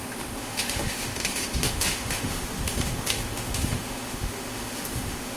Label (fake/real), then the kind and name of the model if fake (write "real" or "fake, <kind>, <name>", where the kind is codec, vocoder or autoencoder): fake, autoencoder, DAC-VAE